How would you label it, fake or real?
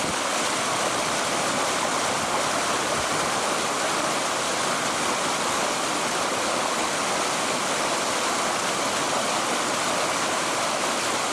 real